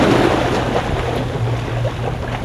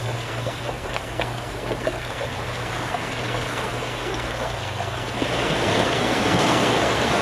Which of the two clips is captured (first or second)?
first